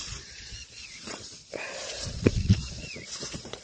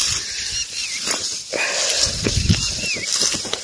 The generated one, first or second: first